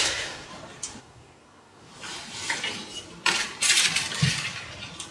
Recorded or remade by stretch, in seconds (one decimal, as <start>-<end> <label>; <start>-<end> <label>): 0.0-0.5 remade; 0.5-1.0 recorded; 1.0-1.9 remade; 1.9-5.1 recorded